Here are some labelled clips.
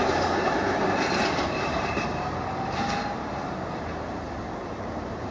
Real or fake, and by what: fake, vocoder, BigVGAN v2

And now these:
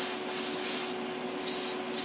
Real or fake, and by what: real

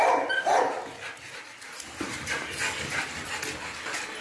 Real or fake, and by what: real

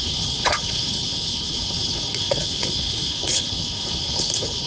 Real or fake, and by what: fake, codec, HILCodec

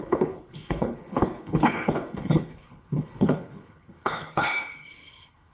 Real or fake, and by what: fake, codec, HILCodec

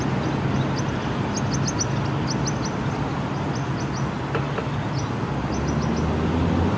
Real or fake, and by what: real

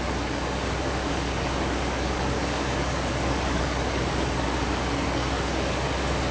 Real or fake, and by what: fake, codec, DAC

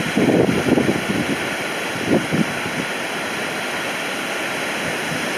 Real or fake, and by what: real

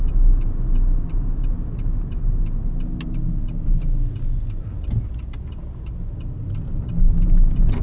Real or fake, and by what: real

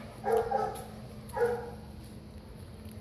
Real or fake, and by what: real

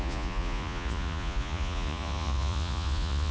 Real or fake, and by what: fake, vocoder, Vocos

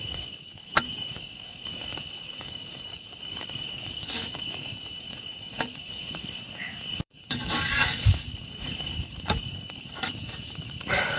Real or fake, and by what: fake, codec, DAC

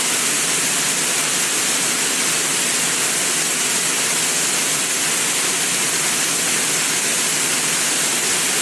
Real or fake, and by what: real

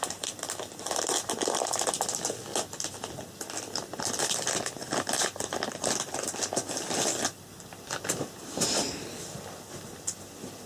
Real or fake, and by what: real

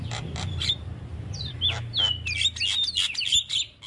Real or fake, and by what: real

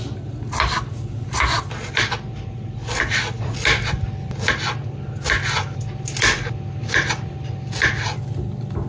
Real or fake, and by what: real